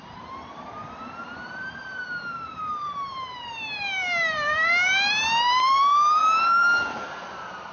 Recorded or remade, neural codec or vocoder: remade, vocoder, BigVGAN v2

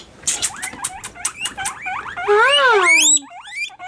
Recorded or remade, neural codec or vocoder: recorded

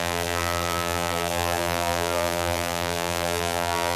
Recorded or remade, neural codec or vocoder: remade, vocoder, BigVGAN v2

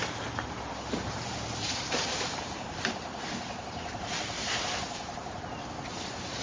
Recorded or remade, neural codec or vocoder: remade, vocoder, BigVGAN v2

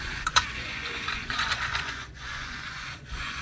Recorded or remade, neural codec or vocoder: remade, vocoder, Vocos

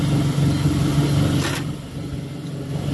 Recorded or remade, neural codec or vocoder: recorded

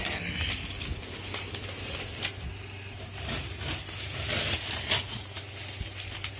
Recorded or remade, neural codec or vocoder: recorded